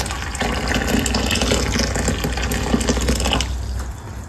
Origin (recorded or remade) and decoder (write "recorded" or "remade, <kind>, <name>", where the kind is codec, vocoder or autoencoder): recorded